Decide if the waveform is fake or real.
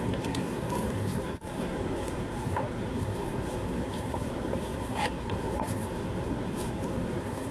fake